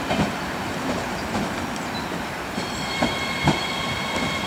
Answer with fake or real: fake